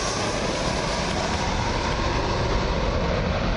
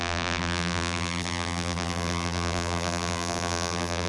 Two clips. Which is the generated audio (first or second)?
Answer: second